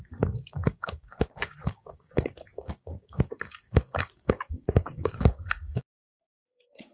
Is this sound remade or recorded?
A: remade